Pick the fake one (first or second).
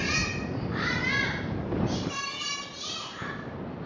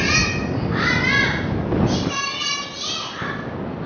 first